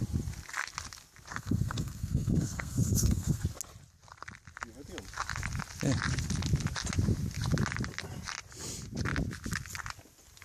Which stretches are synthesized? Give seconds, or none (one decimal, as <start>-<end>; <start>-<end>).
1.3-3.4